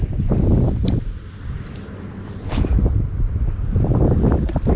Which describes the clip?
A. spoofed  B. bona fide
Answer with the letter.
A